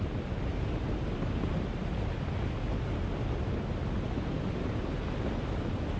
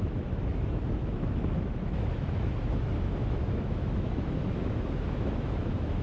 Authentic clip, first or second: first